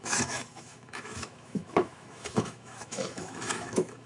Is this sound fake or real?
fake